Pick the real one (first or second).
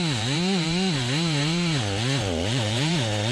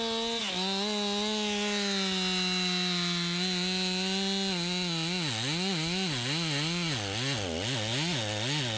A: second